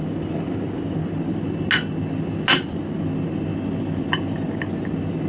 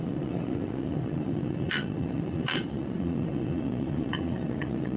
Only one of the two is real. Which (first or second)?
first